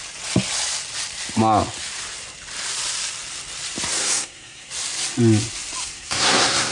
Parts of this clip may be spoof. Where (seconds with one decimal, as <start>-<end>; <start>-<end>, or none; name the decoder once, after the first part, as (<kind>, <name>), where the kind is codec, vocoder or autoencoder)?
4.0-4.7 (codec, SNAC); 5.8-6.7